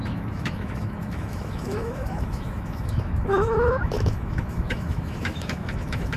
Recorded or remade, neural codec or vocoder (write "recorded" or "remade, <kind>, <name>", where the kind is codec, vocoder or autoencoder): remade, autoencoder, DAC-VAE